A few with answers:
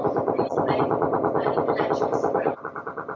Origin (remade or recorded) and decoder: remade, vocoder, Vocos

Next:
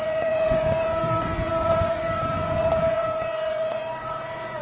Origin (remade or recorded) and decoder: remade, vocoder, Vocos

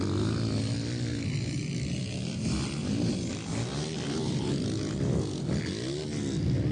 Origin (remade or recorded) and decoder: recorded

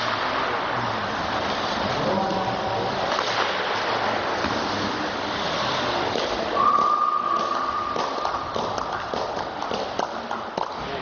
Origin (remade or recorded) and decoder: recorded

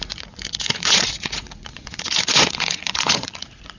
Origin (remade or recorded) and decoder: remade, vocoder, Vocos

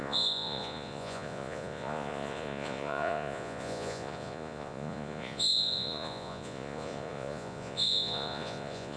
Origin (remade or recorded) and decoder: remade, vocoder, Vocos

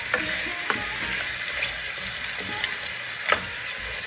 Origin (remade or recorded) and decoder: recorded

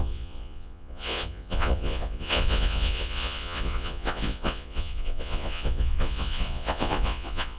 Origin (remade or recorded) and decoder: remade, vocoder, Vocos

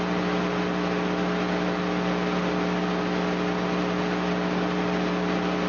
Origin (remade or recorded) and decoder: recorded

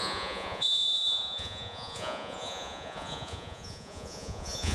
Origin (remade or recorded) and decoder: remade, vocoder, Vocos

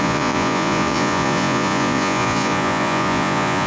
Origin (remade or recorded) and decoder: remade, vocoder, Vocos